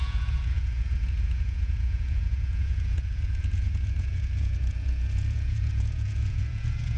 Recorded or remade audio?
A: remade